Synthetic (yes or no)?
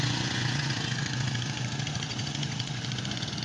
yes